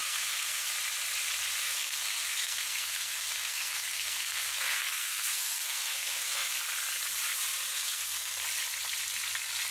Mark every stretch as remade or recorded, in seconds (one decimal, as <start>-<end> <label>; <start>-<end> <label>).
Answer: 0.0-0.7 remade; 0.7-1.6 recorded; 1.6-6.6 remade; 6.6-7.7 recorded; 7.7-8.4 remade; 8.4-9.7 recorded

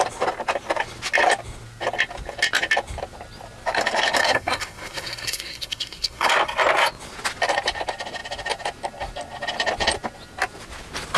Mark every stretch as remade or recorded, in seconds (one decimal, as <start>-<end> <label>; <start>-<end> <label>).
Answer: 0.0-4.2 recorded; 4.2-6.3 remade; 6.3-11.2 recorded

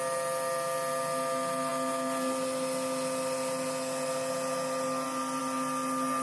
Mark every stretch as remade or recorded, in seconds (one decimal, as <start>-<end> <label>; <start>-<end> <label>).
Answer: 0.0-6.2 recorded

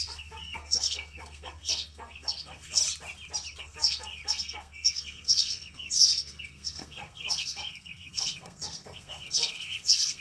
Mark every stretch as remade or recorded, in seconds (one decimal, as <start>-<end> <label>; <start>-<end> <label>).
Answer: 0.0-2.8 remade; 2.8-3.6 recorded; 3.6-10.2 remade

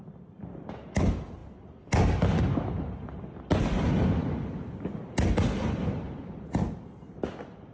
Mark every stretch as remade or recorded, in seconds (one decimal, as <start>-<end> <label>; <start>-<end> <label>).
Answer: 0.0-7.7 recorded

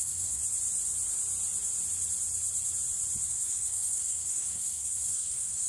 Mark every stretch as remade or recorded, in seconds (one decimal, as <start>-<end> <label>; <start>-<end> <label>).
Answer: 0.0-0.4 remade; 0.4-3.3 recorded; 3.3-5.7 remade

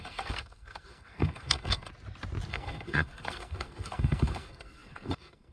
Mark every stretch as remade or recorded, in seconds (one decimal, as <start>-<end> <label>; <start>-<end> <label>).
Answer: 0.0-1.9 remade; 1.9-2.5 recorded; 2.5-5.5 remade